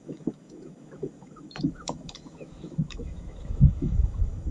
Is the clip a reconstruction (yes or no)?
yes